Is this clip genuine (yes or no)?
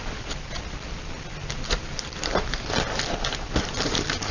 yes